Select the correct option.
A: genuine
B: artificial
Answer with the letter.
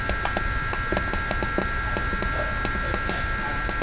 A